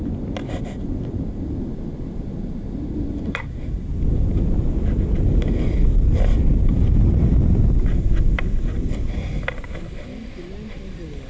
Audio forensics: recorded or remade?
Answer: recorded